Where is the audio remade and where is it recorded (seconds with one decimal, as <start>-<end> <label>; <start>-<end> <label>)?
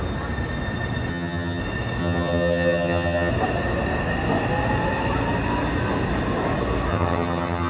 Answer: 0.0-1.1 recorded; 1.1-1.6 remade; 1.6-2.0 recorded; 2.0-3.3 remade; 3.3-6.9 recorded; 6.9-7.7 remade